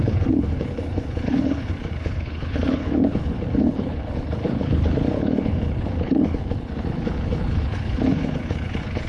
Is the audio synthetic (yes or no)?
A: yes